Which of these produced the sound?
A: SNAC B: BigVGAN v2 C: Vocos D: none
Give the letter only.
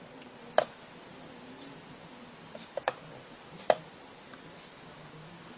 D